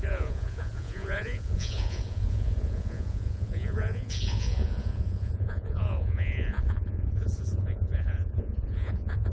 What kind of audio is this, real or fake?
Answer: fake